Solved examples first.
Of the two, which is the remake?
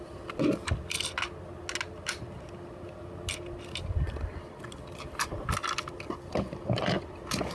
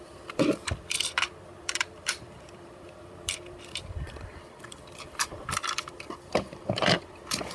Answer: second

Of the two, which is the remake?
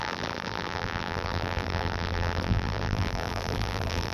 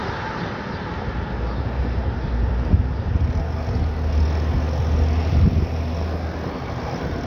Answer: first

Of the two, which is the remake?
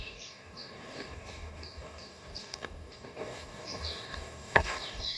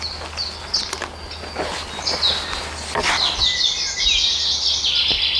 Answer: first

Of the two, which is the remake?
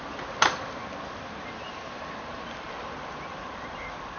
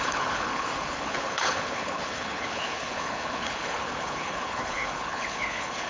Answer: second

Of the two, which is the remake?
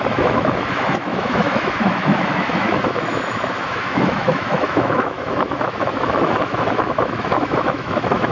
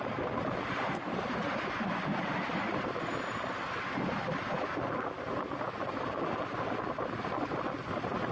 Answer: first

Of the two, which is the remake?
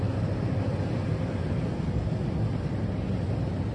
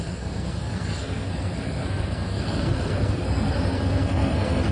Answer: second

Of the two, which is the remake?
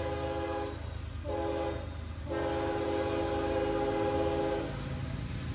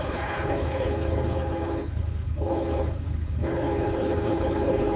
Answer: second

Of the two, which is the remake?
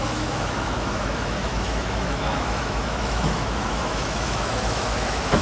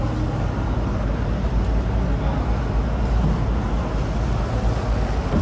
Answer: first